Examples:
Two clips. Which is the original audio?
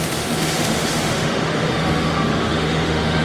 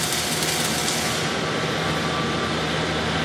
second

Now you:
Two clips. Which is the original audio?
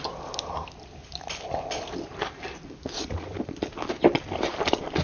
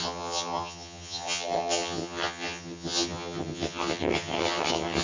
first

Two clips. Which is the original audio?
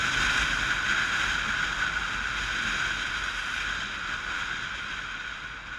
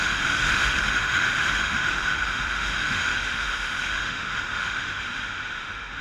first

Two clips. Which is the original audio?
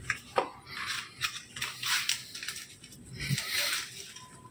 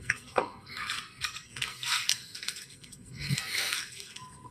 first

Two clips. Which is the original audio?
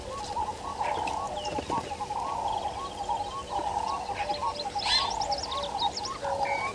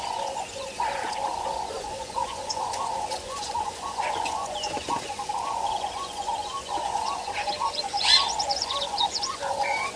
first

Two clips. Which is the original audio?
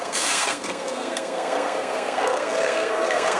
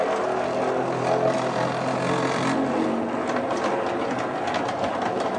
second